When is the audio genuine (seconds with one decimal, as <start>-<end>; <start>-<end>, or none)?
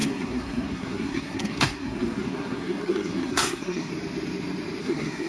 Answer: 3.9-4.8